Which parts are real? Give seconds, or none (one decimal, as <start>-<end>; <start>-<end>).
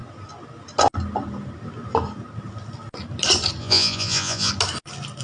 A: 0.0-3.6; 4.5-5.2